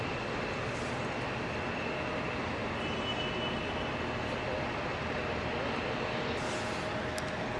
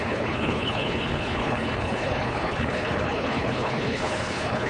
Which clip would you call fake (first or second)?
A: second